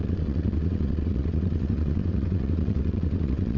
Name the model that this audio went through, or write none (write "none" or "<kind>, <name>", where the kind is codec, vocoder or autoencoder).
vocoder, WaveNeXt